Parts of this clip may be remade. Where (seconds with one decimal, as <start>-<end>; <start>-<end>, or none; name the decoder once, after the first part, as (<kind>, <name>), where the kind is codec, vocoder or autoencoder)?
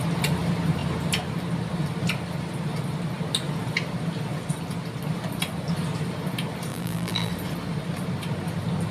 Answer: 6.7-7.3 (vocoder, BigVGAN v2)